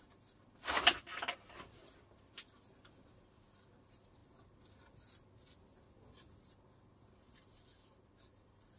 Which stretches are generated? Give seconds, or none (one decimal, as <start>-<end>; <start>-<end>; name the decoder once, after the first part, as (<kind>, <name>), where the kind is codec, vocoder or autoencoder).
none